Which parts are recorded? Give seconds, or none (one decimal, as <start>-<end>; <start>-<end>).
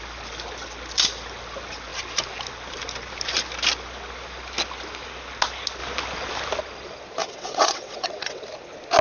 0.0-7.2; 8.4-9.0